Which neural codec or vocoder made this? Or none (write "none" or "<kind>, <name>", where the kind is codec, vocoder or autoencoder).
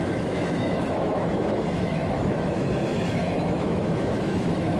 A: autoencoder, DAC-VAE